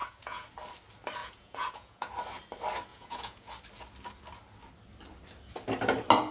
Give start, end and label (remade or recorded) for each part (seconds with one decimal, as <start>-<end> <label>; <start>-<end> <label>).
0.0-0.5 remade; 0.5-1.2 recorded; 1.2-2.1 remade; 2.1-2.9 recorded; 2.9-3.5 remade; 3.5-6.3 recorded